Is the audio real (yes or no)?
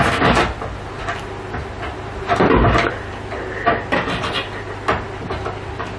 yes